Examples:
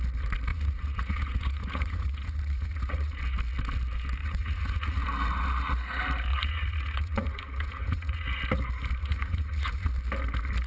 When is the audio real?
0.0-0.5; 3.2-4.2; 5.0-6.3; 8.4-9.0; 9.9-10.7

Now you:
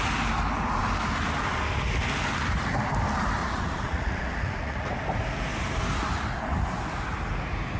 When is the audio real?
0.0-3.4; 4.9-7.8